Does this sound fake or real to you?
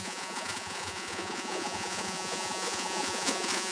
fake